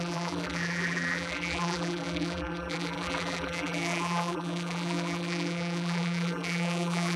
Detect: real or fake fake